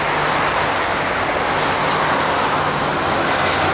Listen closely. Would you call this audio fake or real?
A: real